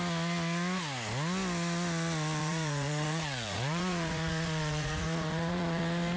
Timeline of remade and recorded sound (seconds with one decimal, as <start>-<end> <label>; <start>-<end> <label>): 0.0-2.4 recorded; 2.4-5.8 remade; 5.8-6.2 recorded